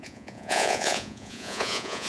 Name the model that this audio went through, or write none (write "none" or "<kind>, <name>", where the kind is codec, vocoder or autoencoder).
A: vocoder, Vocos